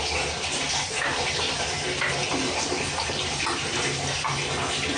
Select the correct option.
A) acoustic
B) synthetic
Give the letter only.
A